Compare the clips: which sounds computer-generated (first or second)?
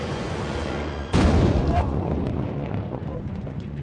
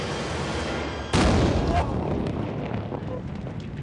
first